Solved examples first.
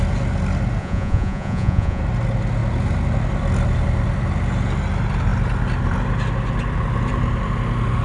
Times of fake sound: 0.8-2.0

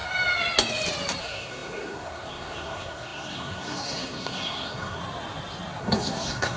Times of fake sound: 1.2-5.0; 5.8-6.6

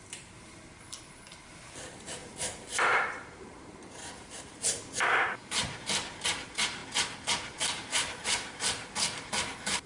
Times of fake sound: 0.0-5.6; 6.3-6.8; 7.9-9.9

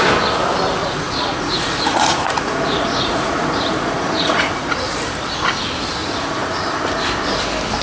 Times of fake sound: 0.8-5.0; 6.0-6.8

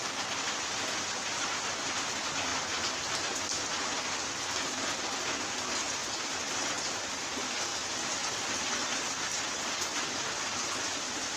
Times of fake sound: 0.0-2.5; 6.8-7.7; 8.3-11.4

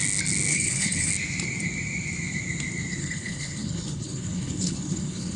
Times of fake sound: 0.5-1.1; 3.0-5.4

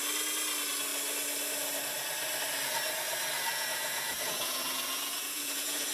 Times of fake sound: 3.5-5.9